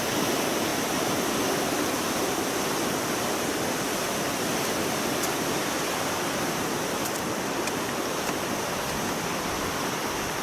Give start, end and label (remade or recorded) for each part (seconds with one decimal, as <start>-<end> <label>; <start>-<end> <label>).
0.0-0.7 recorded; 0.7-4.9 remade; 4.9-10.4 recorded